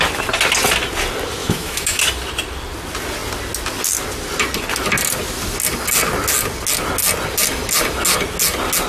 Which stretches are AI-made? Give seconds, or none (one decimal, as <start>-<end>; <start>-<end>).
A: 1.4-2.0